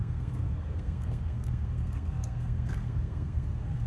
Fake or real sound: fake